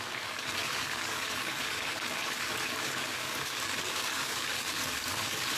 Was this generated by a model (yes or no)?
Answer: yes